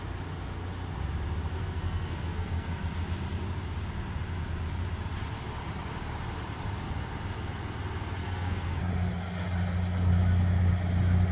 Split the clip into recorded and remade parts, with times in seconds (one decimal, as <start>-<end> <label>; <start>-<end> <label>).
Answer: 0.0-1.5 recorded; 1.5-2.9 remade; 2.9-8.2 recorded; 8.2-8.9 remade; 8.9-11.3 recorded